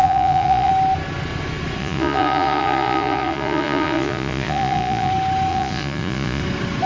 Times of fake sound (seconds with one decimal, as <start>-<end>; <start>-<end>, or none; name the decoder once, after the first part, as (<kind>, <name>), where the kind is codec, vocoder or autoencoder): 0.0-0.7 (vocoder, Vocos); 1.8-5.1; 5.5-6.4